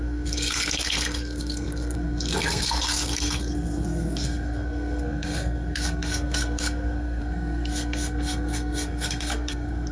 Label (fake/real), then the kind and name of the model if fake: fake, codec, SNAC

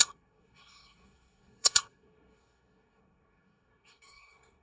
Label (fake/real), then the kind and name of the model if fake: fake, codec, SNAC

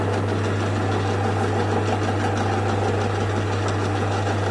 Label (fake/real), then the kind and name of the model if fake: real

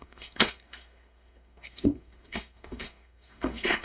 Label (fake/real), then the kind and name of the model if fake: fake, codec, SNAC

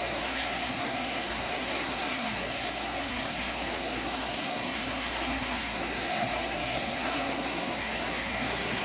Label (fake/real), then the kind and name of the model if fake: fake, codec, SNAC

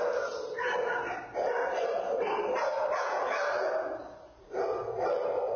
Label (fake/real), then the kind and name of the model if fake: real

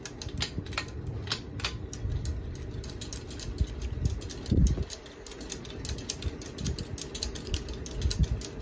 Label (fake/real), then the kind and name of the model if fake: real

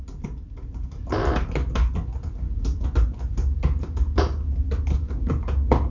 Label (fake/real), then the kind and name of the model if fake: real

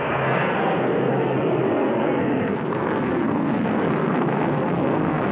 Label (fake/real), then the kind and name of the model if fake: fake, codec, SNAC